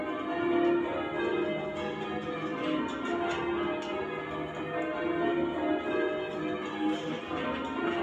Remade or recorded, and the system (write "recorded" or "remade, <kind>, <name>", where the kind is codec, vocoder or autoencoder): recorded